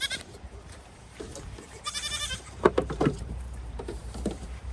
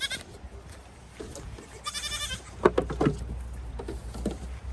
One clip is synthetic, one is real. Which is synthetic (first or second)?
first